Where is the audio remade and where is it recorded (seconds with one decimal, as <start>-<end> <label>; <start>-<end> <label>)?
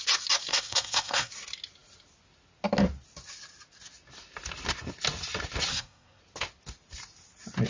0.0-0.5 recorded; 0.5-1.3 remade; 1.3-5.7 recorded; 5.7-6.2 remade; 6.2-7.7 recorded